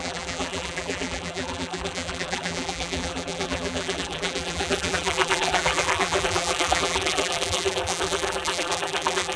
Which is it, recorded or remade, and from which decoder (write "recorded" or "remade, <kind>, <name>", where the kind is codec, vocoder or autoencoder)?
remade, vocoder, BigVGAN v2